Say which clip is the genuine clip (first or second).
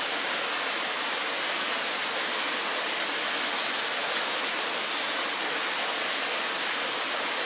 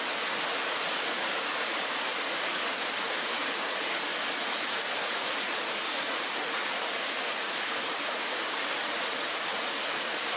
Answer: first